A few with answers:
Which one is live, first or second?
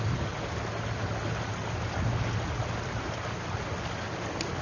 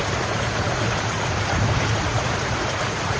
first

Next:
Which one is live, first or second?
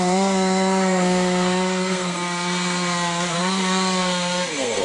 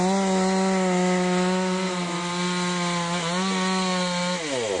second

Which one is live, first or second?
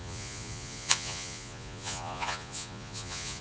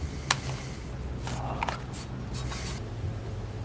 second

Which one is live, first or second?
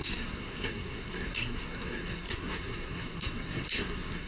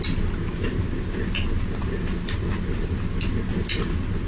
second